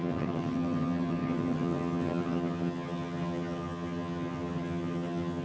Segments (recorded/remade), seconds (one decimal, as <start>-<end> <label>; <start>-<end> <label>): 0.0-5.4 remade